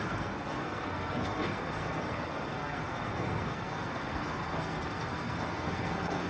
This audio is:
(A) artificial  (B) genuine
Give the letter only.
A